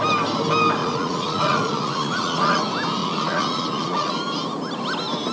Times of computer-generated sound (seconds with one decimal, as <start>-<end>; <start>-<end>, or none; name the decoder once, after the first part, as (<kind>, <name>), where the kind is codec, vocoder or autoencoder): 0.8-2.6 (vocoder, Vocos); 3.0-4.1